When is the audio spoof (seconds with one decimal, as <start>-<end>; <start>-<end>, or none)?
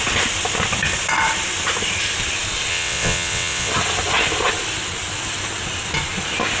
2.7-3.7